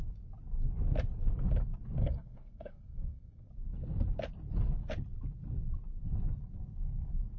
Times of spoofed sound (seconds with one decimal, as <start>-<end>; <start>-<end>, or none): 2.0-3.5